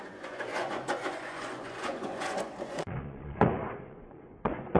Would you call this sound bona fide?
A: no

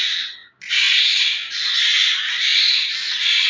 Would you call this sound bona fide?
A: yes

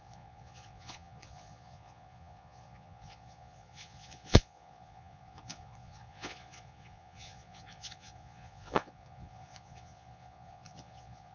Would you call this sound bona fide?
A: no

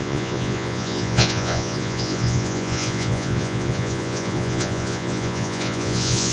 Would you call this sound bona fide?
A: no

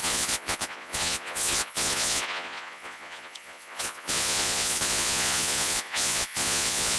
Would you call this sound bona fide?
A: no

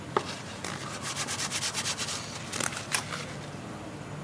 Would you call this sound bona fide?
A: yes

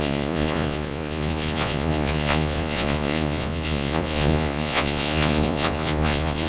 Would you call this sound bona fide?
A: no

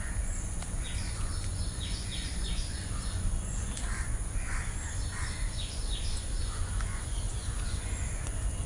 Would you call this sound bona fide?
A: no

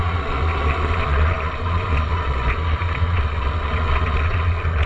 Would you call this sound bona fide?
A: no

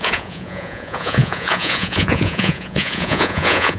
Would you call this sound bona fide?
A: no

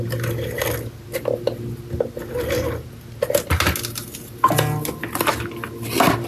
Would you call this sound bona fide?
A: yes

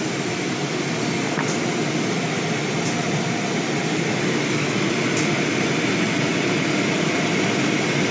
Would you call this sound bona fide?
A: yes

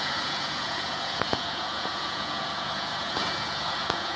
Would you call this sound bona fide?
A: no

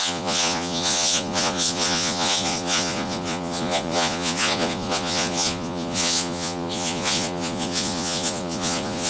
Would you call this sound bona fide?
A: no